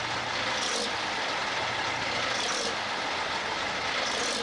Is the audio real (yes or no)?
yes